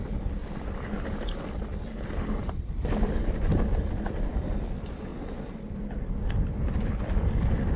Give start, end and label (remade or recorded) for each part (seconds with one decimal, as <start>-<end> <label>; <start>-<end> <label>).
0.0-5.1 remade; 5.1-6.9 recorded; 6.9-7.8 remade